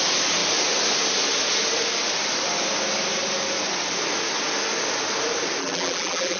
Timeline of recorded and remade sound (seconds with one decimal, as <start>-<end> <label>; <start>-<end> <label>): 0.0-5.6 recorded; 5.6-6.4 remade